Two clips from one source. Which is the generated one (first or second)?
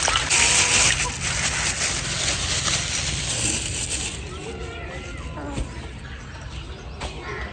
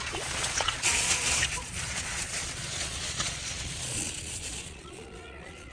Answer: second